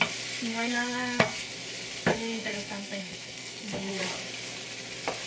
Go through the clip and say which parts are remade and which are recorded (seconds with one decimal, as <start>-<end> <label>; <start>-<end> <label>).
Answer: 0.0-0.5 recorded; 0.5-1.5 remade; 1.5-2.1 recorded; 2.1-4.0 remade; 4.0-5.3 recorded